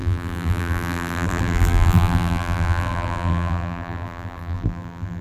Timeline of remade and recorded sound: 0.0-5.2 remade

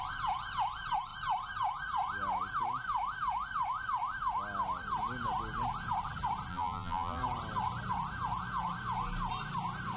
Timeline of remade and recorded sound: 0.0-6.5 recorded; 6.5-7.2 remade; 7.2-10.0 recorded

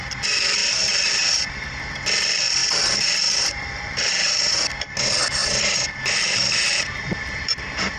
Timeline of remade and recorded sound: 0.0-0.6 recorded; 0.6-1.9 remade; 1.9-2.6 recorded; 2.6-4.5 remade; 4.5-5.4 recorded; 5.4-8.0 remade